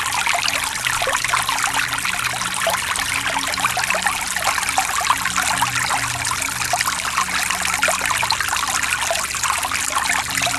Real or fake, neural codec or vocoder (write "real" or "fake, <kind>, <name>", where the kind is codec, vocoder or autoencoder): real